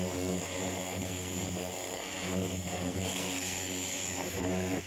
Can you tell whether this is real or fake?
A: fake